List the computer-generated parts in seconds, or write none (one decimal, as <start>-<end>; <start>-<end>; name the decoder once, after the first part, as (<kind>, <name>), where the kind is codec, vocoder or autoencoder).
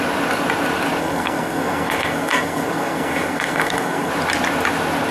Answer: 1.0-4.1 (codec, SNAC)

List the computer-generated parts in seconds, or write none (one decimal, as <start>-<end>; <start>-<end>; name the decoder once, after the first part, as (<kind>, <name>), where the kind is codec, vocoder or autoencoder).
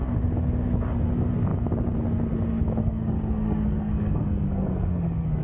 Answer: 2.8-5.4 (codec, SNAC)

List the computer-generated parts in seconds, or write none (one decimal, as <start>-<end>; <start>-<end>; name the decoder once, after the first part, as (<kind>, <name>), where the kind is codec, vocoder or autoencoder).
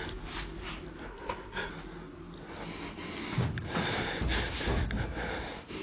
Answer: 1.1-1.7 (codec, SNAC)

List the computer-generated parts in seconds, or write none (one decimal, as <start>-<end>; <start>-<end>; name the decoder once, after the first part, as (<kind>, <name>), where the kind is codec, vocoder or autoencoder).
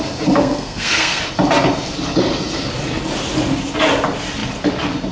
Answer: 0.4-1.2 (codec, SNAC)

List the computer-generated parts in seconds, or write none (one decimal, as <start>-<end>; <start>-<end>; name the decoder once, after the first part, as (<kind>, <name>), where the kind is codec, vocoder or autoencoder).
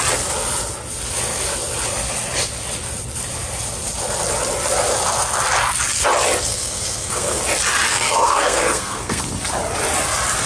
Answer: 6.5-7.4 (codec, SNAC); 7.9-9.2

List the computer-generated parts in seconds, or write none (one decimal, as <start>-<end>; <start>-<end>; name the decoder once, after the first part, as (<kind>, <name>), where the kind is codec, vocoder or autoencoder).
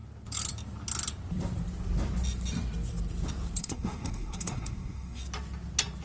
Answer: 3.6-5.2 (codec, SNAC)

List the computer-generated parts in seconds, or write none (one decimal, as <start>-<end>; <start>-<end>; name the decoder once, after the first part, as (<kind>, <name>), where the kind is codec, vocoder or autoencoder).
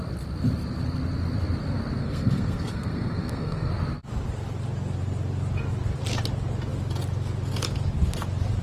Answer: 2.0-3.7 (codec, SNAC)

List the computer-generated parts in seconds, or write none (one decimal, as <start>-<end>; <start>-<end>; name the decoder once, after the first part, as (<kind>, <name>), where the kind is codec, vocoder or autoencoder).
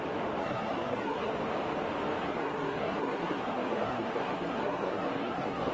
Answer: 0.4-1.3 (codec, SNAC); 2.2-5.7